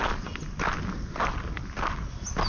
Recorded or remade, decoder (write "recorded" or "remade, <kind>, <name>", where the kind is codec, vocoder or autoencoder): recorded